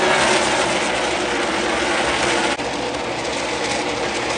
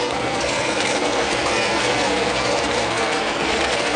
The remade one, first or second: second